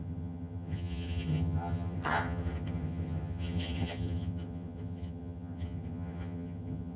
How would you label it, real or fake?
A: fake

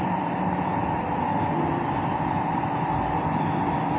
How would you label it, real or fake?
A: real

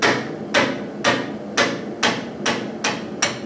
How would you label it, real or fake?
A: real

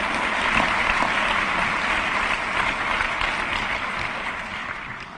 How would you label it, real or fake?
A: real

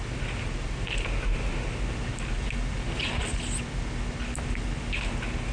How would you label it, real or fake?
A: real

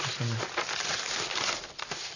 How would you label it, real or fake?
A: real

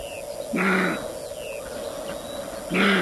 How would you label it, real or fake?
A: real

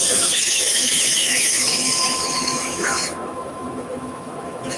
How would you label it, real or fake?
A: fake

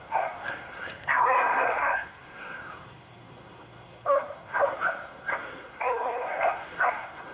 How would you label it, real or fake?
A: fake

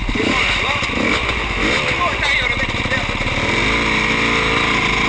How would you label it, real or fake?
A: real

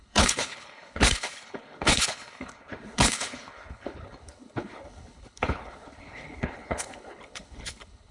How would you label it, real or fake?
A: fake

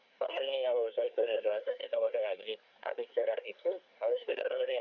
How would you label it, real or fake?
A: fake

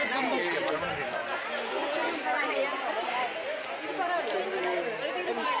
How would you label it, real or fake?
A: real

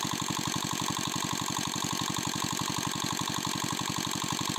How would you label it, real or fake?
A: real